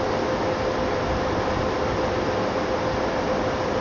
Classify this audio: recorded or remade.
recorded